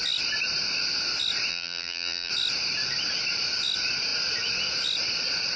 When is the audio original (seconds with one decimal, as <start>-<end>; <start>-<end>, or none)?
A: 0.0-1.5; 2.3-5.6

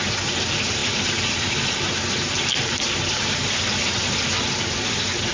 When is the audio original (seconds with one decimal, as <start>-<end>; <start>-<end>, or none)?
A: 0.0-0.8; 3.8-5.3

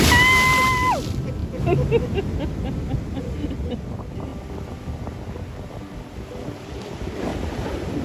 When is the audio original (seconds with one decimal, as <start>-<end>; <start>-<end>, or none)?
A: 0.0-7.3

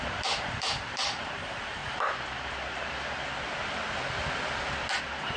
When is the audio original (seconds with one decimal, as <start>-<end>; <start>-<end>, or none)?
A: 1.8-5.0

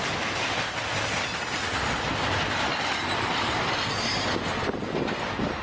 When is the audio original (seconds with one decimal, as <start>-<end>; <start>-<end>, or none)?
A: 0.0-2.7; 3.9-5.6

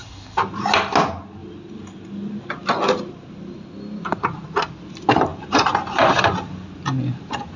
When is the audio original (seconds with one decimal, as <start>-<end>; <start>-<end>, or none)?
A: 0.7-5.3; 6.2-7.6